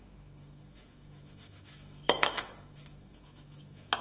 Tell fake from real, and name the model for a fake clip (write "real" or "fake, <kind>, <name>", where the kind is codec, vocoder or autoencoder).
fake, autoencoder, DAC-VAE